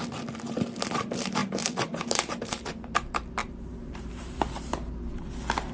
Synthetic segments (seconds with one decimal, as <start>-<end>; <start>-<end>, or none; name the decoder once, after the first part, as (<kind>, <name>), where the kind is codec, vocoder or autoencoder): 1.4-2.6 (vocoder, BigVGAN v2); 3.4-4.4